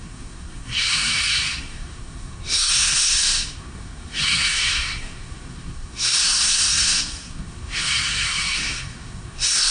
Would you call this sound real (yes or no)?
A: no